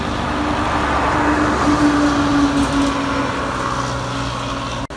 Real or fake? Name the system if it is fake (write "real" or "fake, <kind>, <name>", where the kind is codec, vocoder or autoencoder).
real